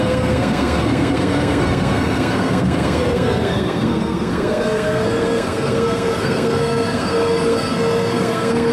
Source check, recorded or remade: remade